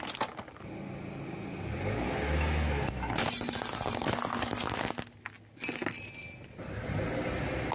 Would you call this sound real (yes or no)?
yes